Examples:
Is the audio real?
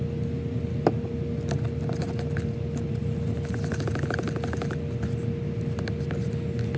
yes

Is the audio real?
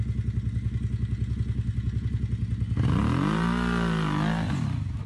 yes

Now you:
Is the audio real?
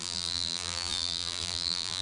no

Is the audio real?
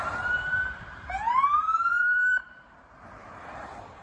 no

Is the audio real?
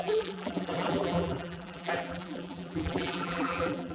no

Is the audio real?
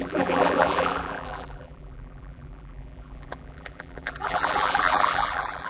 no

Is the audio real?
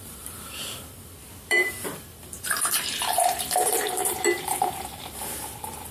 no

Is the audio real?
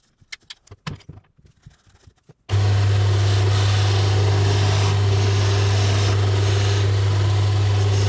yes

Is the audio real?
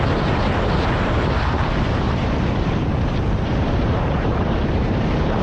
no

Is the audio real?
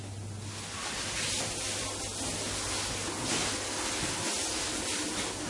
yes